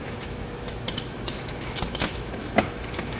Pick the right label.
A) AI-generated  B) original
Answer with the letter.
A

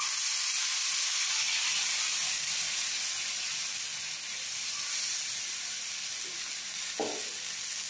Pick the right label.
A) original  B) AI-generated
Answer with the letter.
A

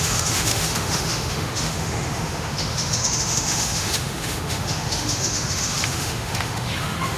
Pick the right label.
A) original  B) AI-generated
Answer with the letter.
B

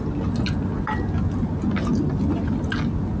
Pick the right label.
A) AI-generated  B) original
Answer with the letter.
B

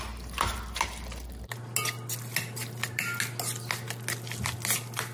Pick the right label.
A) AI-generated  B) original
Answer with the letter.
B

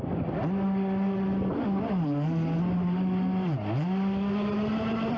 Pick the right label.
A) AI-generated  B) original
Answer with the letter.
B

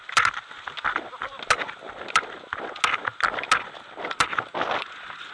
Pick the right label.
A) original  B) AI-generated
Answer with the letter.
A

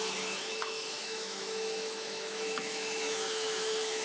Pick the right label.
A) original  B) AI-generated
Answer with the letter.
B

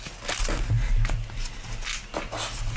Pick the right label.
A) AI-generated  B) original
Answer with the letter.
B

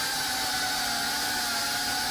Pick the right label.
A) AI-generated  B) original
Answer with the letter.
B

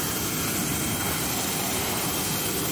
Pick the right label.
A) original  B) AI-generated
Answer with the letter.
A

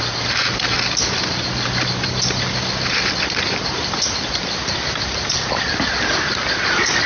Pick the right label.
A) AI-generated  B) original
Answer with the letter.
B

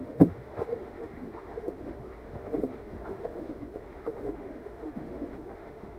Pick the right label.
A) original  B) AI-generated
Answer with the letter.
B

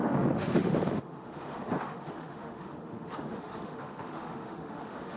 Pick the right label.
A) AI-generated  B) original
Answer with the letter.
A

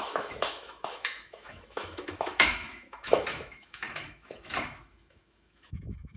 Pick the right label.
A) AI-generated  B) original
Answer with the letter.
A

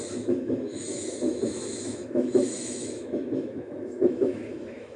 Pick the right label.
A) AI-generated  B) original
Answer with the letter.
A